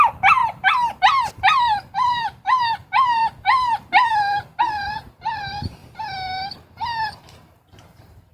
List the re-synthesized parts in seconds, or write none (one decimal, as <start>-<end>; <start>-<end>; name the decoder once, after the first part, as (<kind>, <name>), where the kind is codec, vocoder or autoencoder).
0.0-3.2 (vocoder, BigVGAN v2); 4.6-5.8; 7.2-8.3